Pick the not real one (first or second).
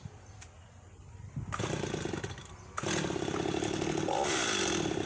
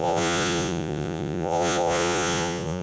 second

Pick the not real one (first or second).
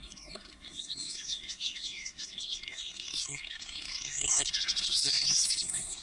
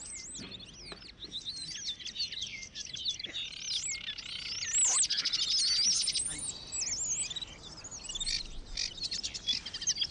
first